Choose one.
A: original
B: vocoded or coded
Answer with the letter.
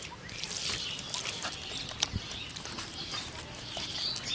A